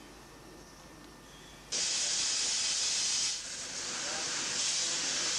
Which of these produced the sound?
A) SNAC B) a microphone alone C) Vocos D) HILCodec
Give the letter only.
B